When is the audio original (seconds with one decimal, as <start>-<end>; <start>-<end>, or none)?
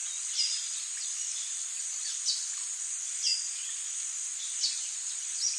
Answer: 0.0-5.6